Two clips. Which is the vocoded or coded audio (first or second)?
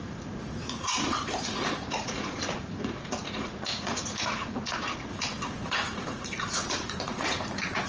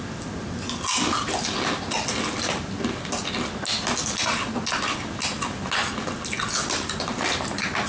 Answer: first